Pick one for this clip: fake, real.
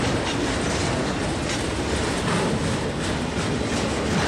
real